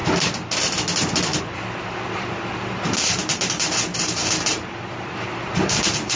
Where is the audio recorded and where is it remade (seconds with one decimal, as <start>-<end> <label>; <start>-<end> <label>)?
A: 0.0-1.4 recorded; 1.4-6.2 remade